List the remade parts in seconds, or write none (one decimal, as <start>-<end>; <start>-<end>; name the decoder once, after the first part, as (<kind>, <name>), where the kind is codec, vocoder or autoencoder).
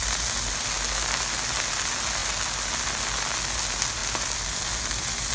none